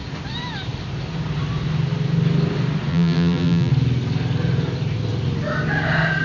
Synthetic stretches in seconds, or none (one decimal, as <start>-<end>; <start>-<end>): 2.9-3.7